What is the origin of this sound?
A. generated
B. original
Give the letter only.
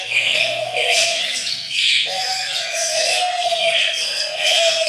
A